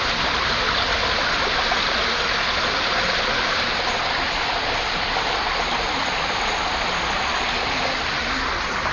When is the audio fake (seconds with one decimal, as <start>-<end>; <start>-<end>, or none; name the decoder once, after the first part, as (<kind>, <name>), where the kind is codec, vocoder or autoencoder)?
none